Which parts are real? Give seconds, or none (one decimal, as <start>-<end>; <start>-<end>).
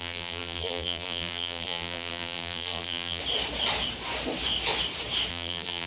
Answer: 3.2-5.3